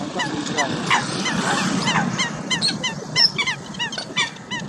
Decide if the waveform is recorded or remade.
recorded